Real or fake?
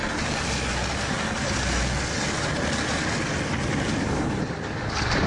real